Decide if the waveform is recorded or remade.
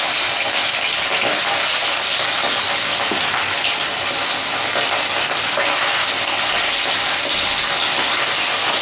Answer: recorded